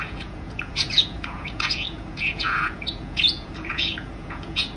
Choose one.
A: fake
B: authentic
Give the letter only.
A